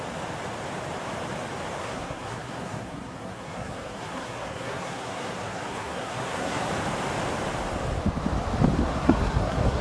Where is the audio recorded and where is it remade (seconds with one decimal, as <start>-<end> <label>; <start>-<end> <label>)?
0.0-1.8 recorded; 1.8-6.7 remade; 6.7-8.8 recorded; 8.8-9.8 remade